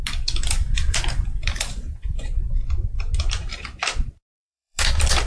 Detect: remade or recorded remade